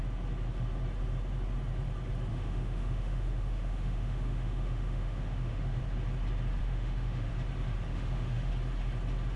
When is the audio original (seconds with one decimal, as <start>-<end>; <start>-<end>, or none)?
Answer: 0.0-2.3; 5.8-6.6; 7.3-7.9; 8.5-9.4

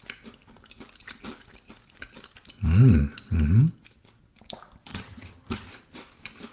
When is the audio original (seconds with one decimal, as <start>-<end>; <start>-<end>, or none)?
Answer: 0.0-4.9; 5.7-6.5